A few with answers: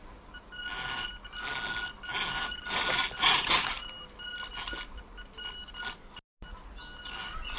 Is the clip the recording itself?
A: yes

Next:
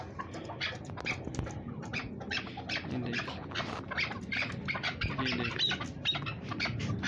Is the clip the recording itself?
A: yes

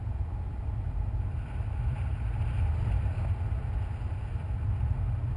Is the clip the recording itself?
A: yes